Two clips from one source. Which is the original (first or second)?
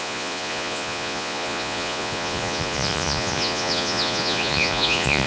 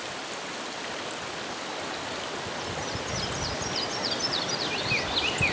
second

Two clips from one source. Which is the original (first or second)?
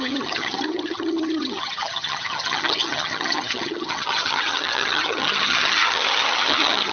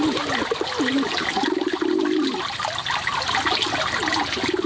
second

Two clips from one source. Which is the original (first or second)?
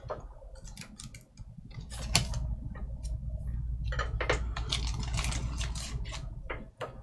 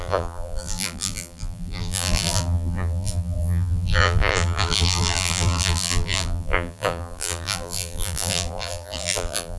first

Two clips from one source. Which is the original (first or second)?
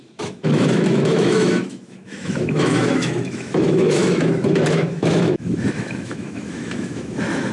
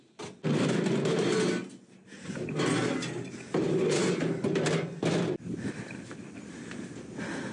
second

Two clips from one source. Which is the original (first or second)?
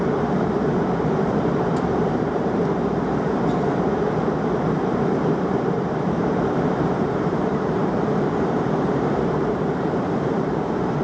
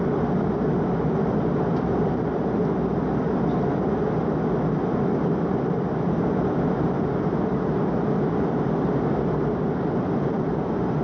second